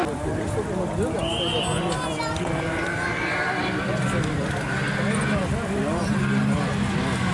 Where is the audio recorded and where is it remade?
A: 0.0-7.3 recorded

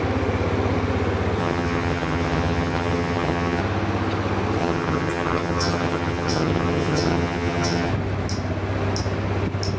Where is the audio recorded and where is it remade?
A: 0.0-1.4 recorded; 1.4-3.6 remade; 3.6-4.6 recorded; 4.6-7.9 remade; 7.9-9.8 recorded